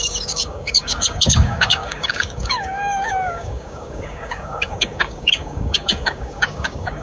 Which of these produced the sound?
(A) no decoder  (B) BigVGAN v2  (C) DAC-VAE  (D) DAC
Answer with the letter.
D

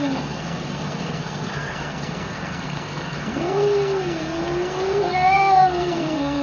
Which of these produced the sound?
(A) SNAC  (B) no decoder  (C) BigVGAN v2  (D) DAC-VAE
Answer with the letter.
A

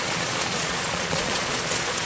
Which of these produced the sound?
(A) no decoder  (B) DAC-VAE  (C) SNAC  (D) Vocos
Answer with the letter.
D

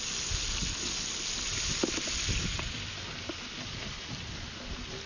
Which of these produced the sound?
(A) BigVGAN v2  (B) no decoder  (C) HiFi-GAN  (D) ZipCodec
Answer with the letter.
B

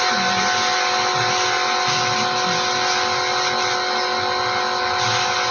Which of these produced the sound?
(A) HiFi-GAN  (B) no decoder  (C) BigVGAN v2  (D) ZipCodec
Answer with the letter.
B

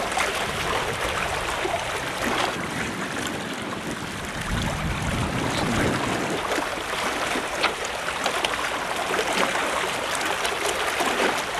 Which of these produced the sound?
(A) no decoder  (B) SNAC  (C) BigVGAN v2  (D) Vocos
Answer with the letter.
A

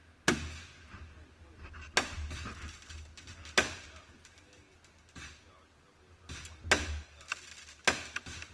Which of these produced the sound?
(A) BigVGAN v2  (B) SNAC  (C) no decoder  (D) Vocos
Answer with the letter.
C